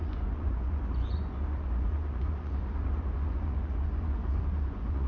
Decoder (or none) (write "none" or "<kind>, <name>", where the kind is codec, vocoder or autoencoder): vocoder, Vocos